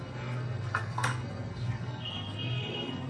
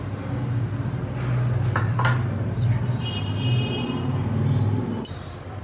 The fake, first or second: first